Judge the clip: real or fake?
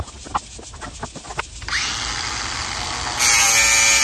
real